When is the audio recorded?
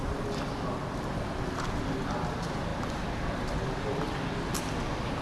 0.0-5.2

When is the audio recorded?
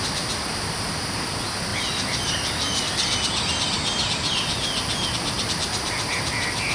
0.0-6.7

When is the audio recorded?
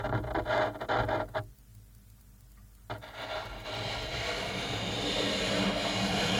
0.0-6.4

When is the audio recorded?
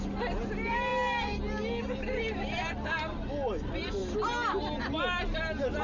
0.0-5.8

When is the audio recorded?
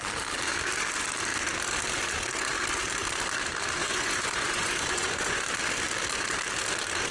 0.0-3.8; 5.4-7.1